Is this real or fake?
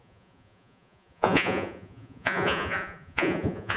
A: fake